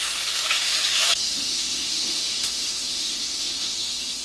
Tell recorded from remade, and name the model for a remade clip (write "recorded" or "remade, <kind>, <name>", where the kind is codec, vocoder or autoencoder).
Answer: remade, autoencoder, DAC-VAE